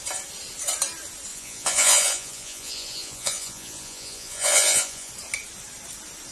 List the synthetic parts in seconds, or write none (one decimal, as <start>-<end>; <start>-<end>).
1.3-5.1